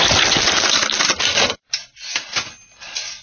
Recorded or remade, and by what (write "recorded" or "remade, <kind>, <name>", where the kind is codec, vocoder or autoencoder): remade, vocoder, BigVGAN v2